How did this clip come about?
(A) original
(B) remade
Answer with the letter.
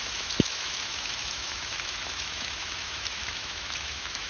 B